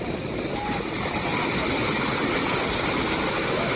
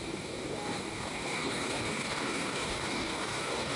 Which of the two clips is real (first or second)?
first